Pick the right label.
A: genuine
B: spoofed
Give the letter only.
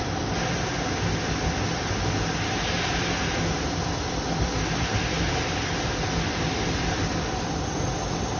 A